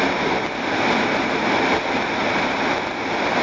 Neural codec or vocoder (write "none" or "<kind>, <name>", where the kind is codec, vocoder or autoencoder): none